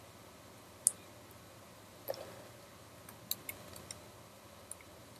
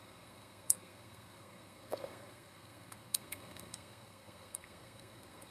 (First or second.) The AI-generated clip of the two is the second